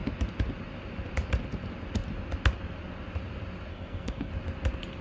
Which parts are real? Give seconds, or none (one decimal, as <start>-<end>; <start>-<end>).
0.0-3.7; 4.3-5.0